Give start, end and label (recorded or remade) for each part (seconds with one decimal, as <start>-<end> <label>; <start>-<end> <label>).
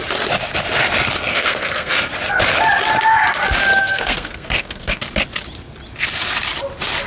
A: 0.0-1.3 recorded; 1.3-1.9 remade; 1.9-3.8 recorded; 3.8-5.0 remade; 5.0-7.1 recorded